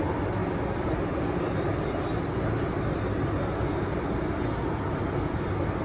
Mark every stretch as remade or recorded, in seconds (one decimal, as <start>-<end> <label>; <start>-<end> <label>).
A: 0.0-5.8 recorded